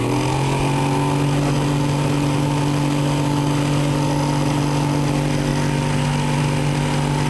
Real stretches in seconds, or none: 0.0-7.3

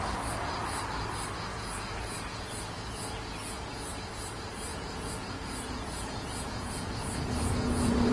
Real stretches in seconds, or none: 0.0-1.5; 4.1-4.7

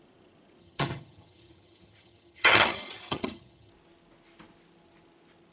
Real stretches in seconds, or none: 0.0-0.6; 3.7-5.5

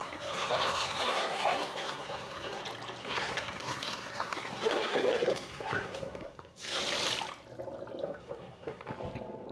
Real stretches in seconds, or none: 2.6-3.0; 6.8-8.0; 8.9-9.5

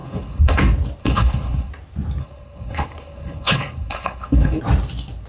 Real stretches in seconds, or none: 0.6-1.0; 1.7-2.2; 4.6-5.3